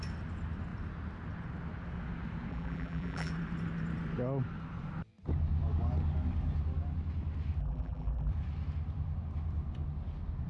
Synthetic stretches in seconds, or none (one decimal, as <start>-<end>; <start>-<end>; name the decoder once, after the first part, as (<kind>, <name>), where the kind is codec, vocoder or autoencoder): 2.5-3.3 (vocoder, BigVGAN v2); 7.6-8.3